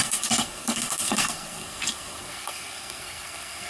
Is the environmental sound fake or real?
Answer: fake